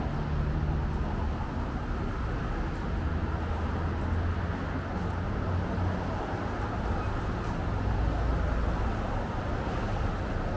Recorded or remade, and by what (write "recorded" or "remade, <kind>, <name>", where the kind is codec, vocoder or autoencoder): recorded